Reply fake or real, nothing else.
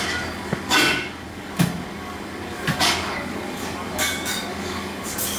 fake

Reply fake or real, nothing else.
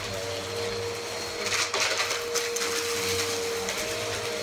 real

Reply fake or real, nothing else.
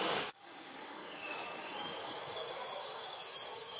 fake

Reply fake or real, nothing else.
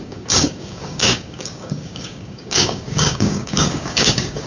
fake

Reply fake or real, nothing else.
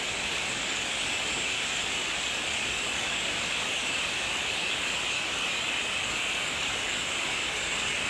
fake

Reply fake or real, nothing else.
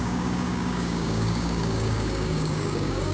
fake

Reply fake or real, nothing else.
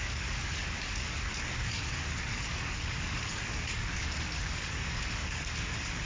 fake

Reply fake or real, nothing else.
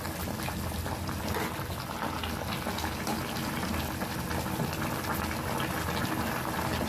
real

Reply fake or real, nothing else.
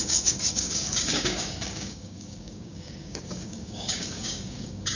fake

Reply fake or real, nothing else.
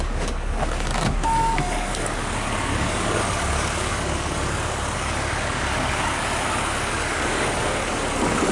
fake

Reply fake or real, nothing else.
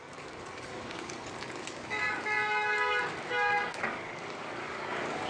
fake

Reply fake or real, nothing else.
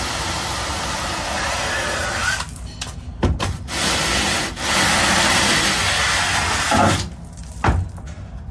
real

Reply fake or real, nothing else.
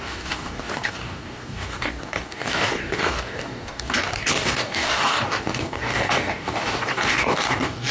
fake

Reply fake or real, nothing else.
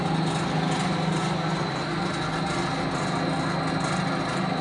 real